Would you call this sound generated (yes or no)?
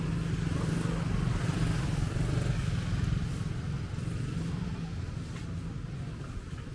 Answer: no